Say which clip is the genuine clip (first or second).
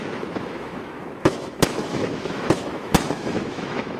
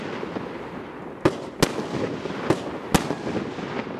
second